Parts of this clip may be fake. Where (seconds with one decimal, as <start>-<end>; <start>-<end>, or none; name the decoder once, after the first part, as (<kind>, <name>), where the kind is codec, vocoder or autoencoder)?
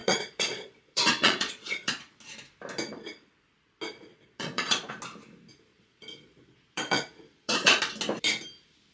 0.0-2.2 (vocoder, Vocos); 4.1-4.9; 5.7-7.8